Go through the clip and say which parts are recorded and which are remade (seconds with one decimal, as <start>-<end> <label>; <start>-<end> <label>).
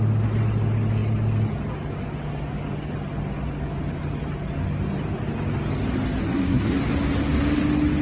0.0-6.2 recorded; 6.2-6.8 remade; 6.8-8.0 recorded